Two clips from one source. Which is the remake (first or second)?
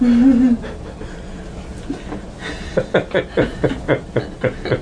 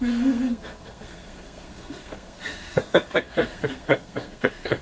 second